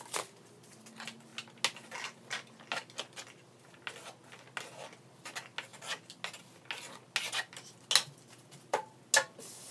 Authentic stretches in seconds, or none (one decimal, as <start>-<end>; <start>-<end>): 0.0-9.7